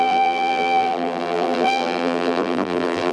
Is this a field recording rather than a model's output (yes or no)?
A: no